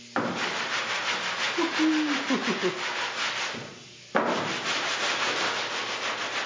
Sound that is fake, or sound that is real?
real